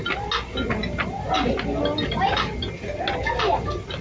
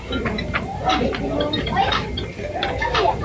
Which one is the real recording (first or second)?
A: first